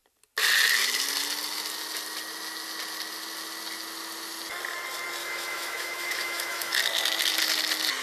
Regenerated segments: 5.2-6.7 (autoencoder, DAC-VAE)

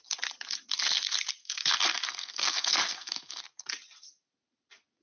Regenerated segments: 1.4-3.4 (codec, SNAC)